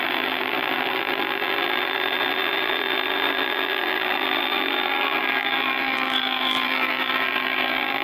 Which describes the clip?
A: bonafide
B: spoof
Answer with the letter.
B